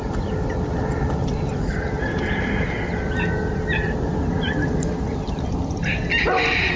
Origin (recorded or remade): recorded